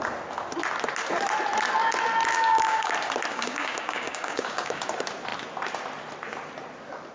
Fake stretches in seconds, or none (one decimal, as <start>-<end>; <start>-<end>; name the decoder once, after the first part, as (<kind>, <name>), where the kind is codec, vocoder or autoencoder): 2.3-2.9 (codec, DAC); 3.3-4.8